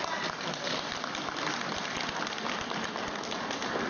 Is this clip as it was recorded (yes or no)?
yes